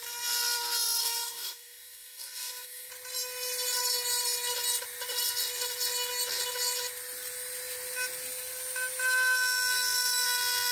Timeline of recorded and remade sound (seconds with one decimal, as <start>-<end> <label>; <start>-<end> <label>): 0.0-1.0 recorded; 1.0-2.9 remade; 2.9-10.7 recorded